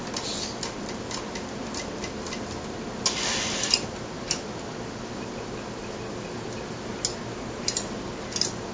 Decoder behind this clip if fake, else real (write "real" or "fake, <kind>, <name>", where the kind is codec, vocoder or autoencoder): real